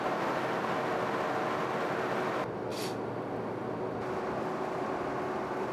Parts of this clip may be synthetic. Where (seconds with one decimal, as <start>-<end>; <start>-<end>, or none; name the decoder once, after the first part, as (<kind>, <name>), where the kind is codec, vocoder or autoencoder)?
none